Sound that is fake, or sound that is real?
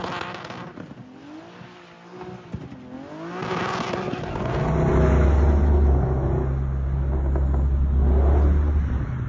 real